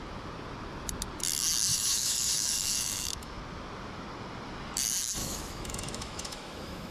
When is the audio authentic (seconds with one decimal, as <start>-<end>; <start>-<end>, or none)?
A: 0.0-1.7; 3.4-5.2